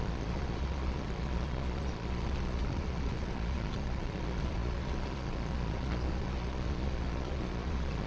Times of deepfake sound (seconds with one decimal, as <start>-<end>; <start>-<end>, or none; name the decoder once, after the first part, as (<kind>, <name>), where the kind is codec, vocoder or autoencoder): 0.0-8.1 (vocoder, Vocos)